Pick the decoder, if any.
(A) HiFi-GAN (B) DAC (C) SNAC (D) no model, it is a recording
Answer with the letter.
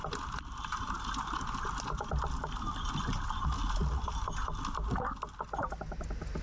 D